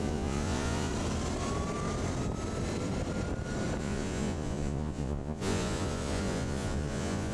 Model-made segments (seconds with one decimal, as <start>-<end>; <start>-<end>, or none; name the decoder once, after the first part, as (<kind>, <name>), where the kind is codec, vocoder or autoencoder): 0.0-0.9 (vocoder, Vocos); 3.8-7.3